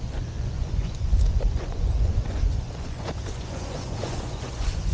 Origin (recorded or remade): remade